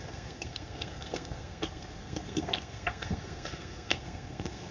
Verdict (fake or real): fake